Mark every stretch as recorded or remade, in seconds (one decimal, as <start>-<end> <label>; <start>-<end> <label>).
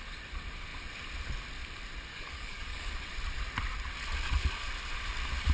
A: 0.0-2.1 recorded; 2.1-3.1 remade; 3.1-5.5 recorded